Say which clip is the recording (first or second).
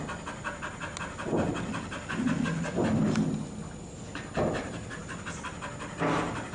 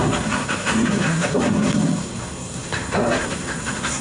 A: first